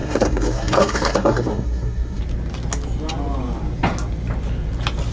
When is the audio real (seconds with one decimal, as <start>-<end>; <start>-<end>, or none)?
2.2-5.1